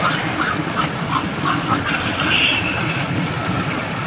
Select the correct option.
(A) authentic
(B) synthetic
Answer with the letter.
A